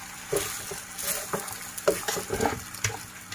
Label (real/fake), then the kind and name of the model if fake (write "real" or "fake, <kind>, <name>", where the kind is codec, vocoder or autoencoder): real